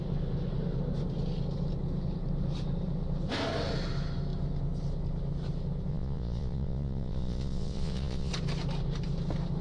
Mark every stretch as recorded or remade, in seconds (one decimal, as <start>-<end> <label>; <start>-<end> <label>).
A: 0.0-5.9 recorded; 5.9-8.3 remade; 8.3-9.6 recorded